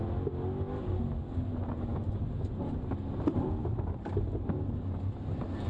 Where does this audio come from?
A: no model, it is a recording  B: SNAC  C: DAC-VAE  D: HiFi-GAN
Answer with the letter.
A